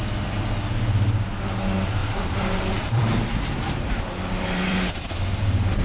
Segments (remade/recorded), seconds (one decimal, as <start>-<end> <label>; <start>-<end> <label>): 0.0-2.0 recorded; 2.0-5.8 remade